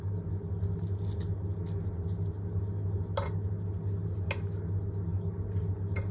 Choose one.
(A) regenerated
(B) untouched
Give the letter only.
B